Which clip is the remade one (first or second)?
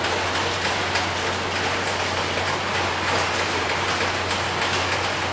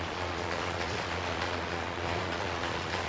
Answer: second